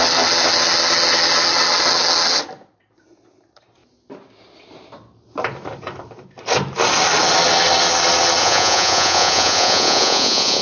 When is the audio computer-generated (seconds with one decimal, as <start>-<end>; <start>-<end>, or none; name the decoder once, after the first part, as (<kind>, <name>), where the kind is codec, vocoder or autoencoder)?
8.4-10.6 (vocoder, Vocos)